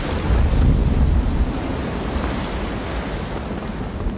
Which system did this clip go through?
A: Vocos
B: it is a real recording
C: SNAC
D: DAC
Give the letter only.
B